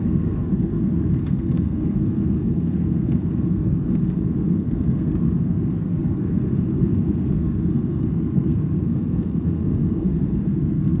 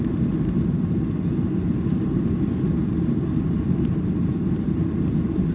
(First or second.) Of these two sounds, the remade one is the first